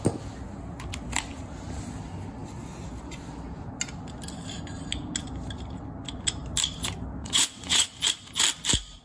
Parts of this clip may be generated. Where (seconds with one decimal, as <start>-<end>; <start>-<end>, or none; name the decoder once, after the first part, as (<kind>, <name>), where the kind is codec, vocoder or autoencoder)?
7.2-8.0 (vocoder, WaveNeXt)